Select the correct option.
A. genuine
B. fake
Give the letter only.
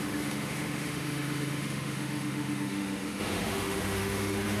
B